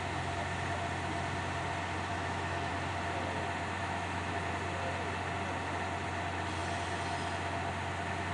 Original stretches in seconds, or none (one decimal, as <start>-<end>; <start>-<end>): 0.0-2.1; 2.7-3.8; 4.5-8.3